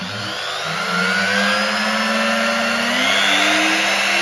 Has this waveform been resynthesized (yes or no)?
no